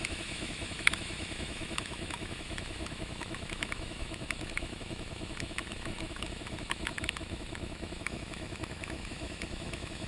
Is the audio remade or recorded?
remade